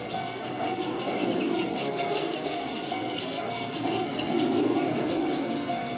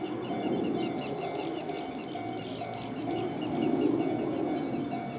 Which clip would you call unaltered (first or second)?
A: second